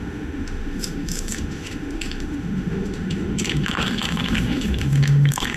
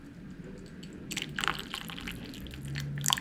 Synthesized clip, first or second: first